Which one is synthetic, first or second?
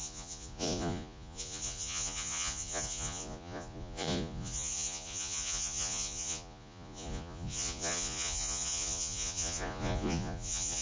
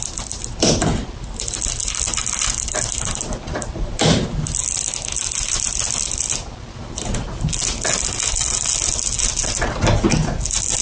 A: first